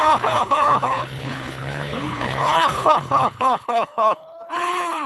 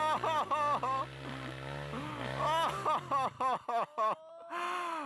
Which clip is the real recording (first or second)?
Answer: second